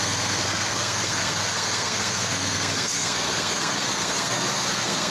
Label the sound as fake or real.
fake